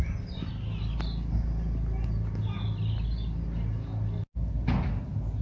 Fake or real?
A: real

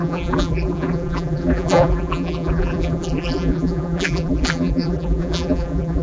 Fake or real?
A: fake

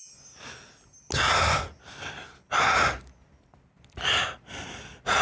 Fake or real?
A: real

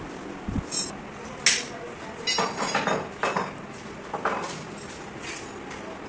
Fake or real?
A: real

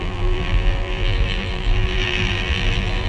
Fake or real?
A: fake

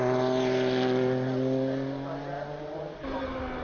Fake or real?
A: real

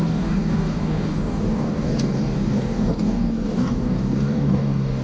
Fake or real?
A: fake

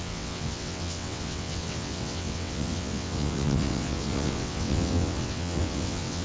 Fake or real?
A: fake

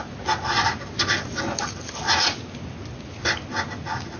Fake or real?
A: real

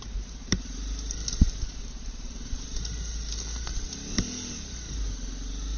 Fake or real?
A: real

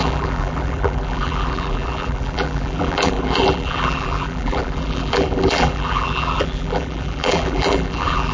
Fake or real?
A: fake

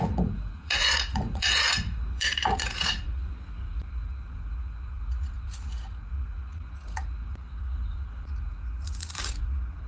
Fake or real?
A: fake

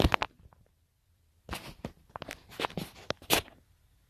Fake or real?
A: real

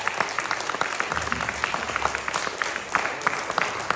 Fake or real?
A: real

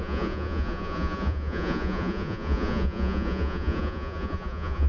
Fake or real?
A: fake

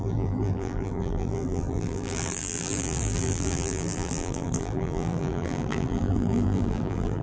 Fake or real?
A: fake